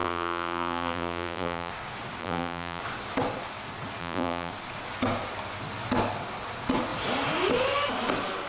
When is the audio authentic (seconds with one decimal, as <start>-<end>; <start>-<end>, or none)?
1.7-2.2; 2.8-4.0; 4.5-8.5